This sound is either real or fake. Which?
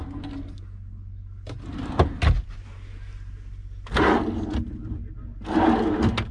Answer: real